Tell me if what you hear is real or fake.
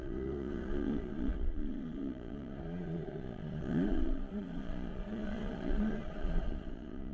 fake